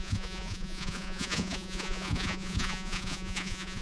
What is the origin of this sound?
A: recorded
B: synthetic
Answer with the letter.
B